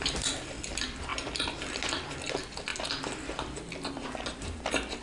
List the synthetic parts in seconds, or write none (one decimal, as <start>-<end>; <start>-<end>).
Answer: none